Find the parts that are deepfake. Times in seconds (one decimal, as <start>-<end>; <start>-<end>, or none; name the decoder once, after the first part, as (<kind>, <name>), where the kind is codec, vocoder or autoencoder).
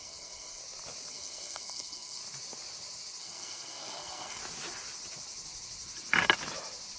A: 0.0-0.6 (codec, SNAC); 1.1-2.2; 3.2-4.4